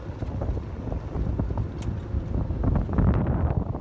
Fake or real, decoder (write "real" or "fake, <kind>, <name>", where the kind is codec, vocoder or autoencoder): real